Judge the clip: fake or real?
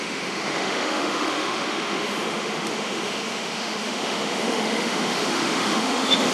fake